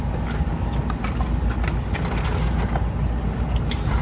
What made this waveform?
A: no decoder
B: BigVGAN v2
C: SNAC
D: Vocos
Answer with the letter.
A